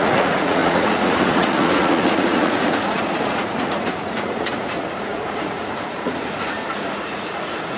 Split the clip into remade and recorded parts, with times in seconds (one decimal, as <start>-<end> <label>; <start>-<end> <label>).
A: 0.0-7.8 remade